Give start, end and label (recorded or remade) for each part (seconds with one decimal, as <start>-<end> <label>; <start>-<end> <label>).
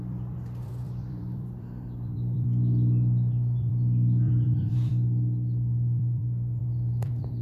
0.0-7.4 remade